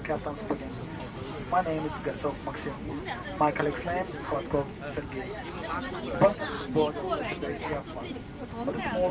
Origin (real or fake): real